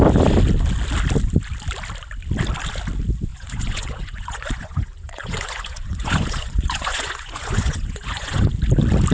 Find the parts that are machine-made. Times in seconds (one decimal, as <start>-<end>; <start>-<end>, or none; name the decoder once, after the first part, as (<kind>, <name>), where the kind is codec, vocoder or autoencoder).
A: 3.3-8.5 (vocoder, Vocos)